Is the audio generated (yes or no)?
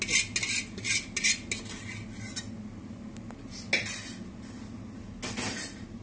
no